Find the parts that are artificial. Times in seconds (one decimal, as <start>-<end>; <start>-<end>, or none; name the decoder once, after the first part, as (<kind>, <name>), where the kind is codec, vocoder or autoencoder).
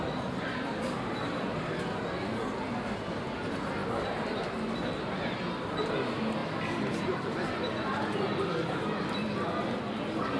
none